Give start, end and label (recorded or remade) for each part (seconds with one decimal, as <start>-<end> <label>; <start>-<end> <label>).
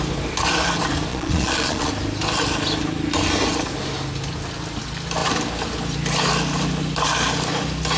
0.0-1.1 recorded; 1.1-1.9 remade; 1.9-8.0 recorded